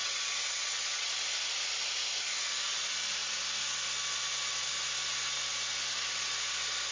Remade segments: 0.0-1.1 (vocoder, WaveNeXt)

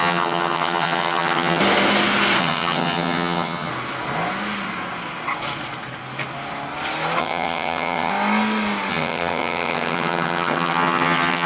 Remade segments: 0.0-1.6 (vocoder, HiFi-GAN); 2.4-3.7; 7.2-8.1; 8.9-11.5

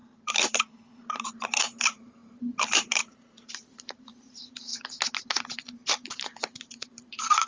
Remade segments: 0.0-4.7 (vocoder, BigVGAN v2); 5.6-7.5

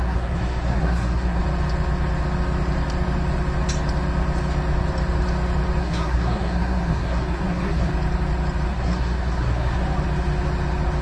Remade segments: 0.0-1.4 (codec, SNAC); 5.8-7.9; 8.7-9.8

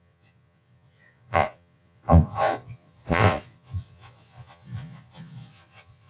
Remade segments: 0.0-6.1 (vocoder, Vocos)

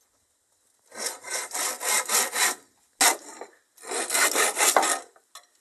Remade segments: none

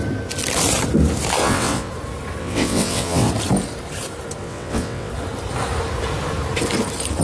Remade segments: 1.4-1.9 (vocoder, WaveNeXt); 2.4-3.3; 4.4-5.1